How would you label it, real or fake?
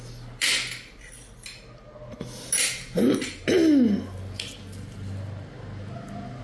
real